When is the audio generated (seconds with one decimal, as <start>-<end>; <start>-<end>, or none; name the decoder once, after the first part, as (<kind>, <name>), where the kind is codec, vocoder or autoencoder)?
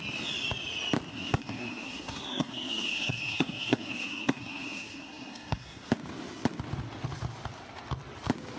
1.1-5.9 (codec, SNAC)